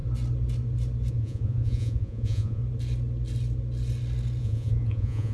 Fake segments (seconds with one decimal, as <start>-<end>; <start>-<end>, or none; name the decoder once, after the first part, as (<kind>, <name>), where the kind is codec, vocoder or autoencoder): 1.1-2.6 (vocoder, Vocos); 4.4-5.3